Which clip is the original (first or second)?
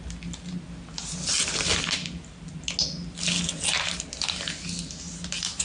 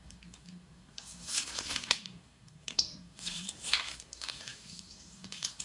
first